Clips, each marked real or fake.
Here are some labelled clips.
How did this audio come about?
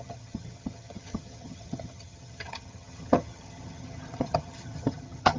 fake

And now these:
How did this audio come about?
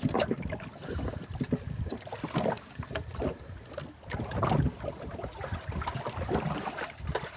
real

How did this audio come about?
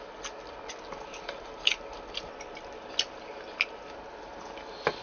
real